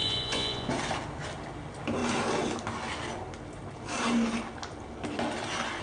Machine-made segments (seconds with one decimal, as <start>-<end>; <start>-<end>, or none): 0.0-0.7